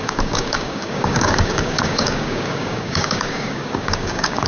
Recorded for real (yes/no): no